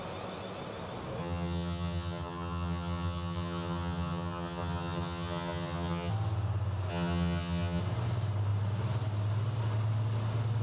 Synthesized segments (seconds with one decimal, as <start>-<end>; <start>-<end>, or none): 1.2-6.1; 6.9-7.8